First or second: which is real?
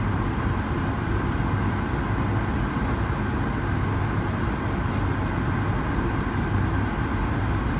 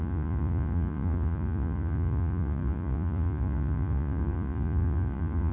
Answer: first